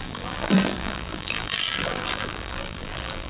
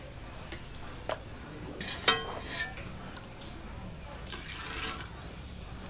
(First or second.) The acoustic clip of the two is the second